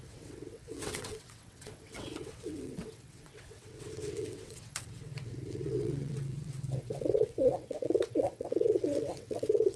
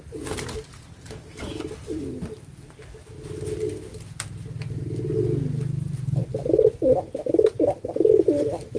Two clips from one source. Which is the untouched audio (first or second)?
second